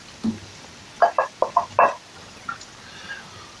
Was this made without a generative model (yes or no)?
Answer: yes